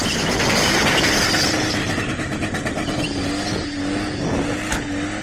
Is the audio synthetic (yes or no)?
no